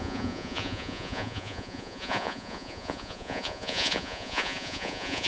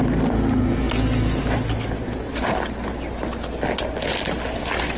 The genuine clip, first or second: second